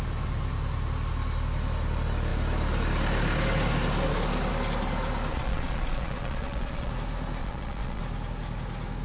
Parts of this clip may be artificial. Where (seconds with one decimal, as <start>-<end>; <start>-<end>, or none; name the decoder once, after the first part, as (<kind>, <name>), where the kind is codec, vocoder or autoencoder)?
5.3-6.9 (vocoder, Vocos); 7.4-8.0

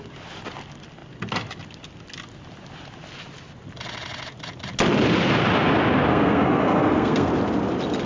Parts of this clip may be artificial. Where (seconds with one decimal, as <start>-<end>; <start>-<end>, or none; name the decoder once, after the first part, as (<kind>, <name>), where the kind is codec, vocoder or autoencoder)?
6.1-7.3 (codec, SNAC)